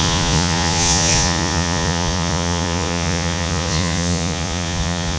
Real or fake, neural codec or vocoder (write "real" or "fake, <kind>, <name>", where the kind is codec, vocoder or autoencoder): fake, vocoder, Vocos